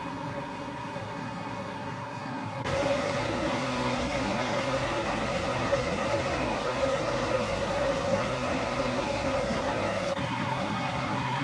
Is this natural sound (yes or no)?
no